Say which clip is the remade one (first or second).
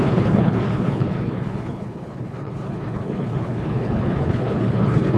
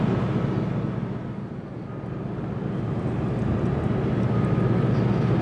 first